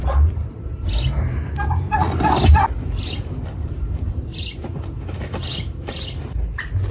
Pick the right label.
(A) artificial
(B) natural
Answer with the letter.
B